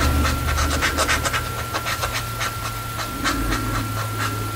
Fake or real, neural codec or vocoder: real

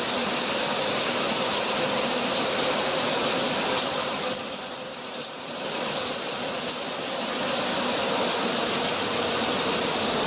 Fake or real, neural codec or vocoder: real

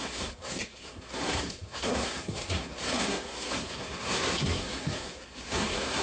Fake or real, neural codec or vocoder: fake, codec, SNAC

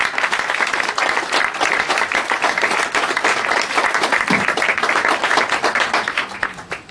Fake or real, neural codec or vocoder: real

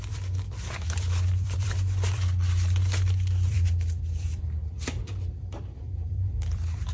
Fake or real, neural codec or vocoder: fake, vocoder, BigVGAN v2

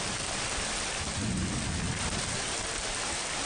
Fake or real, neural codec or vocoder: real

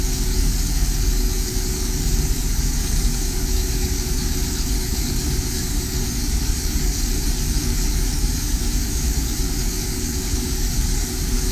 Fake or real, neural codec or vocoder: fake, codec, DAC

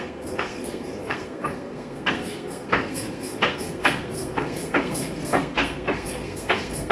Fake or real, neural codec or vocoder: fake, codec, SNAC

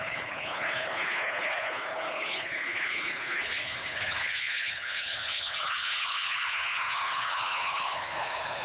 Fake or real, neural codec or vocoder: fake, codec, HILCodec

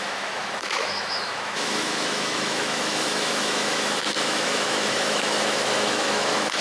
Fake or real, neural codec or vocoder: fake, autoencoder, DAC-VAE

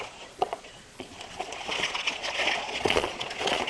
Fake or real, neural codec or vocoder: fake, vocoder, Vocos